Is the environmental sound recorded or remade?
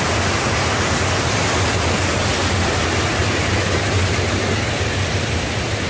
recorded